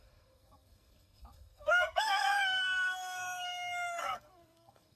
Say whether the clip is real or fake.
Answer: fake